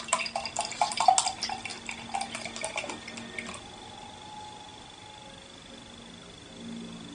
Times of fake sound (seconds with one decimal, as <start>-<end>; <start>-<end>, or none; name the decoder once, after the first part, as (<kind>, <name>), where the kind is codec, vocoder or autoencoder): none